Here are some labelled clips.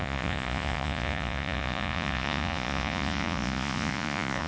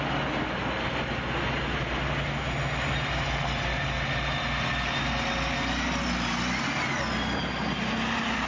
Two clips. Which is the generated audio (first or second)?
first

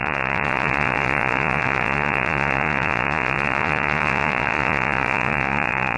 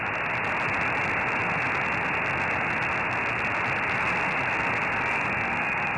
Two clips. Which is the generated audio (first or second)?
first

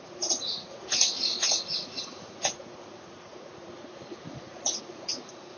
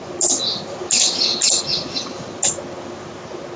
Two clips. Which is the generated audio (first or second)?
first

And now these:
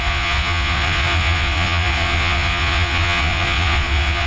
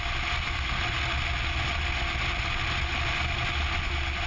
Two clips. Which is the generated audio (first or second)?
first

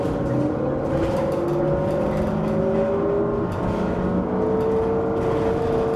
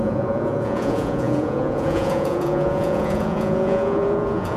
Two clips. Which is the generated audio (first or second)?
second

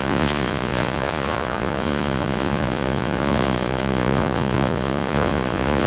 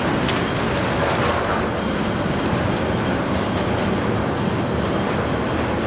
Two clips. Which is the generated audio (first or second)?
first